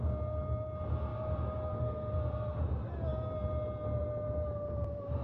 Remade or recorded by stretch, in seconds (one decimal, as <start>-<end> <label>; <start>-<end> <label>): 0.0-5.2 recorded